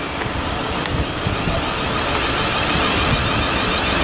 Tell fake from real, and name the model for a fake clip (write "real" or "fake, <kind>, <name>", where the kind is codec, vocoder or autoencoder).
real